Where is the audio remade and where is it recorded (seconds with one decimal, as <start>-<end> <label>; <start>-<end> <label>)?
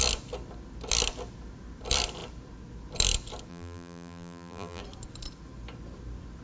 0.0-3.5 recorded; 3.5-4.8 remade; 4.8-6.4 recorded